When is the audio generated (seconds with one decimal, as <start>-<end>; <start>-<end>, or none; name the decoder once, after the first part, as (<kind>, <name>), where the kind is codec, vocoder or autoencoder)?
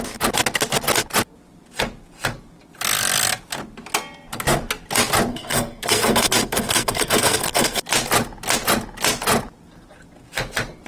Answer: 5.3-7.8 (codec, SNAC)